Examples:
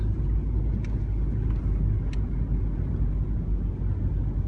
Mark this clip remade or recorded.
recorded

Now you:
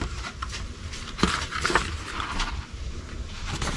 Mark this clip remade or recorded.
remade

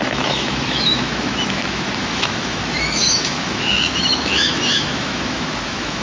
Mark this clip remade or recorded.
remade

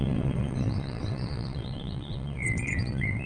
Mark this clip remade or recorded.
remade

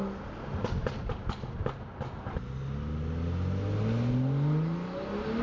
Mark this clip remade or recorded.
recorded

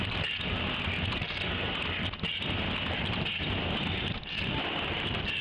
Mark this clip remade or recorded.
recorded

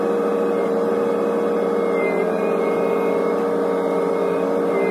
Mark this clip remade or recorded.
recorded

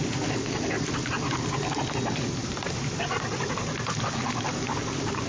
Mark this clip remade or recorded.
recorded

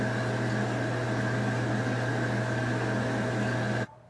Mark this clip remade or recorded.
recorded